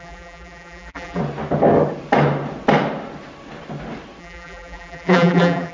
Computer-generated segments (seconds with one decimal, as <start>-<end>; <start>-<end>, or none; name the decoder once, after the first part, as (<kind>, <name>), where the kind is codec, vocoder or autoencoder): 0.0-1.2 (vocoder, BigVGAN v2); 4.2-5.7